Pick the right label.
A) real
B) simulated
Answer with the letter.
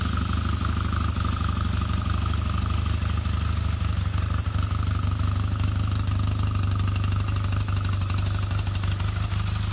A